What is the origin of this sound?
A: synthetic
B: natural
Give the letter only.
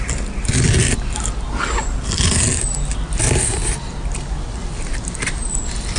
B